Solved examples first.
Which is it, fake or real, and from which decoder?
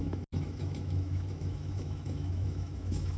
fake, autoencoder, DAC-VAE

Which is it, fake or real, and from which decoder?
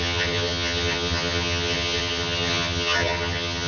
fake, vocoder, HiFi-GAN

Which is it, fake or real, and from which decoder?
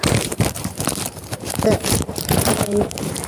fake, vocoder, BigVGAN v2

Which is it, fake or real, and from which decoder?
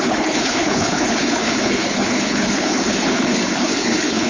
fake, codec, HILCodec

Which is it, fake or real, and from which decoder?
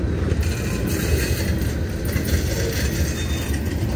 real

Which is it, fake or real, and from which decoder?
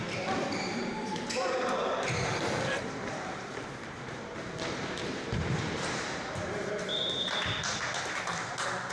fake, vocoder, BigVGAN v2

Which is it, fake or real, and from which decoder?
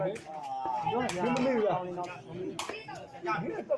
real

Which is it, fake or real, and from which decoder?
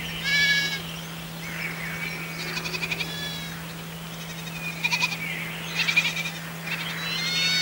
real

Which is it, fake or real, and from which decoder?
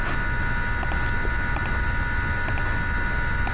real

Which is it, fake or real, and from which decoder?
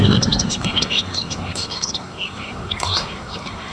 fake, codec, SNAC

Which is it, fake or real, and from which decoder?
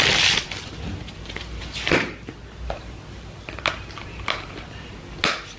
fake, vocoder, BigVGAN v2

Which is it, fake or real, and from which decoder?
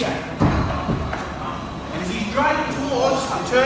real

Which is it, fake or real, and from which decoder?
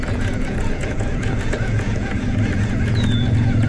fake, vocoder, Vocos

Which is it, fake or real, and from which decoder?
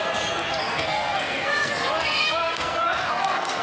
fake, codec, SNAC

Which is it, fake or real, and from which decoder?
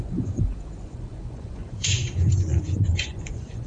fake, vocoder, Vocos